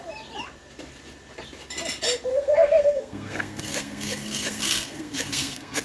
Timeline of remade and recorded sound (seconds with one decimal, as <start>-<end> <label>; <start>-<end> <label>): 0.0-2.3 recorded; 2.3-5.8 remade